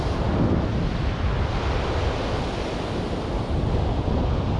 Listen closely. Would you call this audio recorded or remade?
recorded